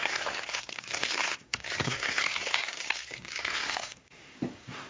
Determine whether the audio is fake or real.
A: fake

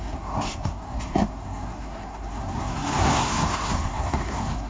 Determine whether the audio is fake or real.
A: fake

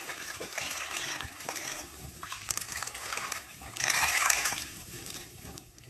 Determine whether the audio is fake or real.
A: fake